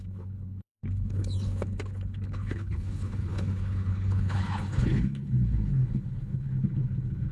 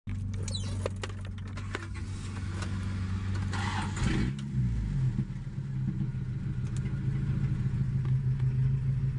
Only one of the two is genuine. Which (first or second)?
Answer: second